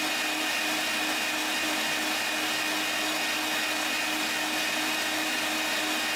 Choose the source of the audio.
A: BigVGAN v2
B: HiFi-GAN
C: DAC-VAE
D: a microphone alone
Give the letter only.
D